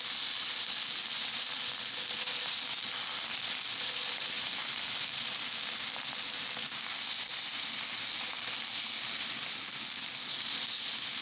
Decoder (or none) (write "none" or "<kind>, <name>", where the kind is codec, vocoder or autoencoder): none